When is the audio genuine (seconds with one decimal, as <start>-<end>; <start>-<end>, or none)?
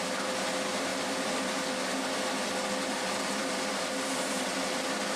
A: 0.0-0.9; 1.5-3.4; 4.5-5.2